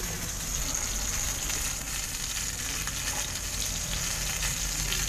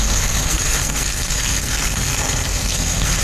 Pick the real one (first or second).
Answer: first